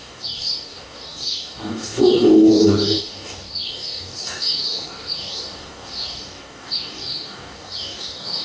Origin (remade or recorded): remade